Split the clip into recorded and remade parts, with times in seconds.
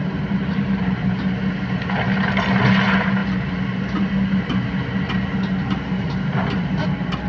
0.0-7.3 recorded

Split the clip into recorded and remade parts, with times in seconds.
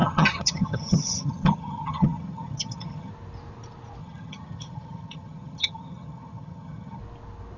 0.0-3.1 remade; 3.1-4.0 recorded; 4.0-7.0 remade; 7.0-7.6 recorded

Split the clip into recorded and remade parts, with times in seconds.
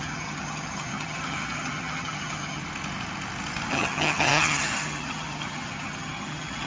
0.0-2.6 remade; 2.6-3.7 recorded; 3.7-6.7 remade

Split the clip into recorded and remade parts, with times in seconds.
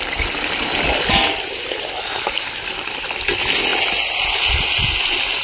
0.0-5.4 recorded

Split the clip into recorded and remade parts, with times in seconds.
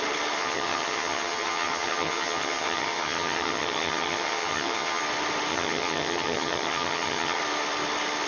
0.0-0.4 recorded; 0.4-5.0 remade; 5.0-5.5 recorded; 5.5-7.4 remade; 7.4-8.3 recorded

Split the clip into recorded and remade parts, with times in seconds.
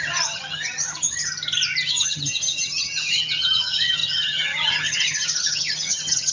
0.0-1.3 remade; 1.3-1.9 recorded; 1.9-6.3 remade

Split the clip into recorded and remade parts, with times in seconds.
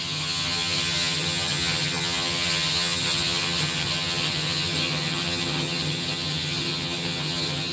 0.0-7.7 remade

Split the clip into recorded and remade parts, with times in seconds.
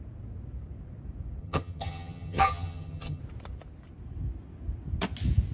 0.0-1.4 recorded; 1.4-3.2 remade; 3.2-5.5 recorded